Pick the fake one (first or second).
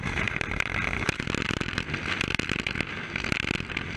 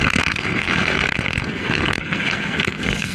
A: second